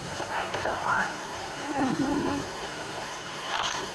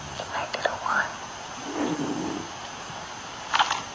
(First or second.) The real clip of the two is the second